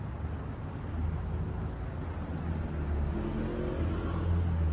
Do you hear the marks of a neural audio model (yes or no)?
no